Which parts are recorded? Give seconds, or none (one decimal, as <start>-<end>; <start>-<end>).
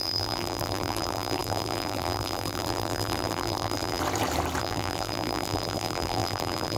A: 4.0-4.6